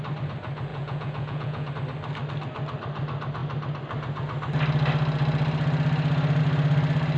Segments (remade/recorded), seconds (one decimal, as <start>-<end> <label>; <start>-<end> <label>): 0.0-0.7 recorded; 0.7-1.7 remade; 1.7-7.2 recorded

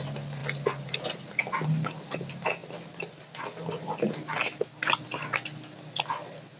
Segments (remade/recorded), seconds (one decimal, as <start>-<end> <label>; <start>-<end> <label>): 0.0-6.6 recorded

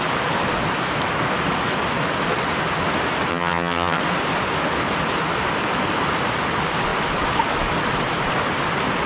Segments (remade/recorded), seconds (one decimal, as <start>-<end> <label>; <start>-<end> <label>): 0.0-3.3 recorded; 3.3-4.0 remade; 4.0-9.1 recorded

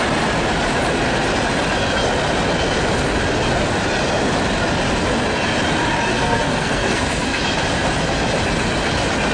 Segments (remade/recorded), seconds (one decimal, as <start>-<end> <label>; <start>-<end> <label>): 0.0-6.1 recorded; 6.1-7.4 remade; 7.4-9.3 recorded

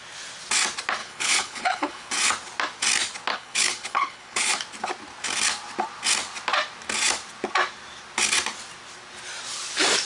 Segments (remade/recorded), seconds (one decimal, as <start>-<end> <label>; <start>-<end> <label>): 0.0-1.0 recorded; 1.0-2.1 remade; 2.1-3.3 recorded; 3.3-4.5 remade; 4.5-10.1 recorded